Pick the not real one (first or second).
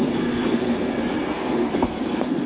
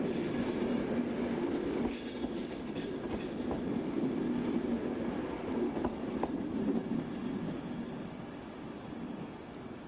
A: first